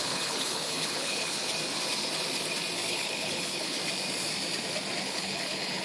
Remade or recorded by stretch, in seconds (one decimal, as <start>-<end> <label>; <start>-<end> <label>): 0.0-1.4 remade; 1.4-2.9 recorded; 2.9-3.8 remade; 3.8-5.0 recorded; 5.0-5.8 remade